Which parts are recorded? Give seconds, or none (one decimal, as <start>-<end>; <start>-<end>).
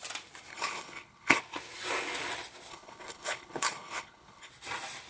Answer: 0.0-0.5; 1.4-2.7; 4.5-5.1